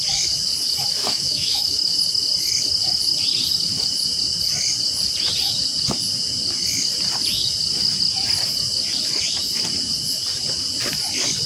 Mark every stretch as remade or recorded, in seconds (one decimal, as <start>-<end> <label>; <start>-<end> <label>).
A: 0.0-1.0 recorded; 1.0-2.0 remade; 2.0-11.5 recorded